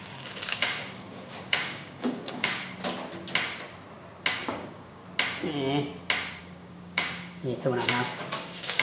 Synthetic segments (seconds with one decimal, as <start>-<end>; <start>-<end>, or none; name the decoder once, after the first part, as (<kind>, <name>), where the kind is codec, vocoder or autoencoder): 0.0-2.6 (codec, DAC); 4.3-5.0; 6.4-8.8